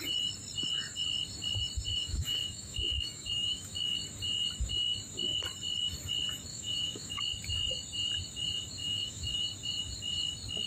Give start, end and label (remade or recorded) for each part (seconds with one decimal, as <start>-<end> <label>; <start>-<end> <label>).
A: 0.0-1.9 recorded; 1.9-3.9 remade; 3.9-6.5 recorded; 6.5-7.2 remade; 7.2-8.8 recorded; 8.8-9.4 remade; 9.4-10.7 recorded